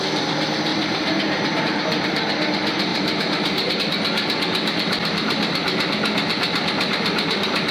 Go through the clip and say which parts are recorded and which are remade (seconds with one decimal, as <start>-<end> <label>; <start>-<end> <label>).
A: 0.0-0.7 recorded; 0.7-1.6 remade; 1.6-2.9 recorded; 2.9-3.8 remade; 3.8-7.7 recorded

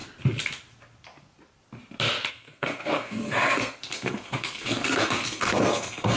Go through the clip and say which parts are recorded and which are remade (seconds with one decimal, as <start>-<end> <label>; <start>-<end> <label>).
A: 0.0-2.3 recorded; 2.3-6.2 remade

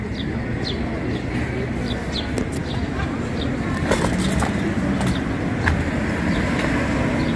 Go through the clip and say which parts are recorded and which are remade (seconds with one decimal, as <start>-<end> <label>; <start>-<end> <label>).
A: 0.0-7.4 recorded

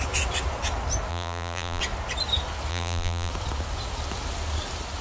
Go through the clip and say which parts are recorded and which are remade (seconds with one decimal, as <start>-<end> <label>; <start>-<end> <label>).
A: 0.0-1.1 recorded; 1.1-1.8 remade; 1.8-2.7 recorded; 2.7-3.3 remade; 3.3-5.0 recorded